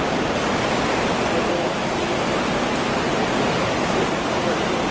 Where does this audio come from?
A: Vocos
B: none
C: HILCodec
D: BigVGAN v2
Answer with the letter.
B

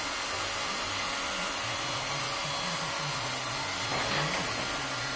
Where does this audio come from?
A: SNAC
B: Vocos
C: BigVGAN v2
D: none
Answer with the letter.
D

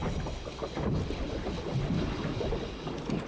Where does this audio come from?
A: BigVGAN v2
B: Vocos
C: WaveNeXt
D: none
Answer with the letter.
D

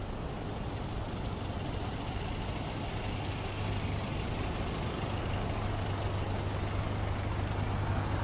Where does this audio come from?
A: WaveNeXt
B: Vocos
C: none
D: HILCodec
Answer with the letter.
C